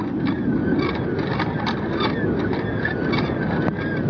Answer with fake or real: real